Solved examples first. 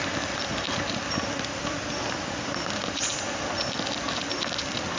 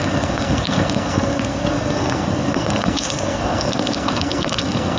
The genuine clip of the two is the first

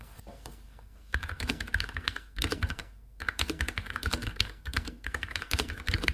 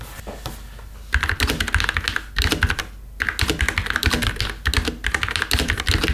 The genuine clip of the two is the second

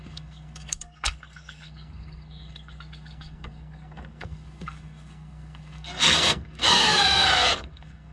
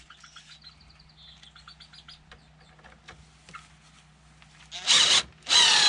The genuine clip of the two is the second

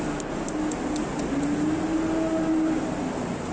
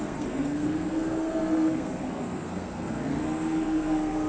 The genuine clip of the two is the first